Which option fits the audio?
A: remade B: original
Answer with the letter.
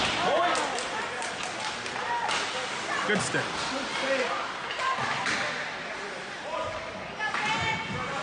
B